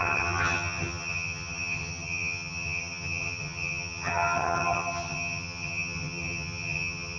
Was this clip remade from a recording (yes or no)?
yes